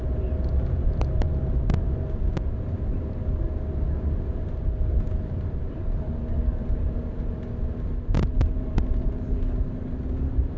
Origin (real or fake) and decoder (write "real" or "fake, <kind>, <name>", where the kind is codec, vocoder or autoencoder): real